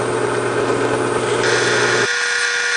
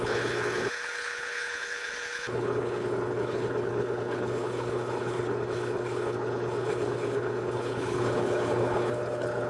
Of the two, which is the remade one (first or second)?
second